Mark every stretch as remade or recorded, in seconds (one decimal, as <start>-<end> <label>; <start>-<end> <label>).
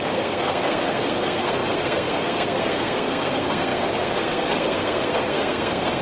0.0-6.0 remade